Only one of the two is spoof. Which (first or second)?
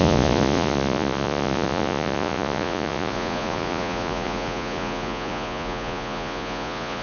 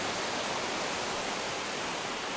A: first